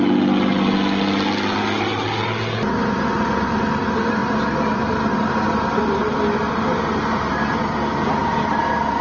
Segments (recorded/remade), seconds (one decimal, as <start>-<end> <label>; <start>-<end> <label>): 0.0-9.0 recorded